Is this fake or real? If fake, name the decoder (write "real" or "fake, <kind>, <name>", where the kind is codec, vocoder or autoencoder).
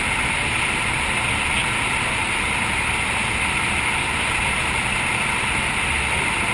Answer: real